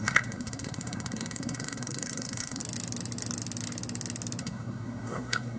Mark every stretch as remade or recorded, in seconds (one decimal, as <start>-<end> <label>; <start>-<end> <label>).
0.0-2.6 remade; 2.6-4.4 recorded; 4.4-5.6 remade